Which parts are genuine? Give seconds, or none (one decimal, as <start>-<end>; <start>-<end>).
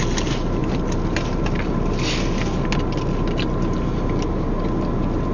0.0-5.3